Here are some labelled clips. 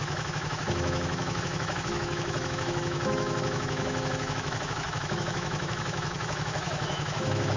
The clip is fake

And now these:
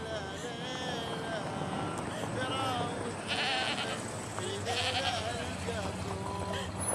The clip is real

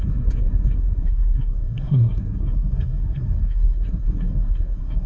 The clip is fake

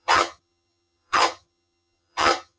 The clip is fake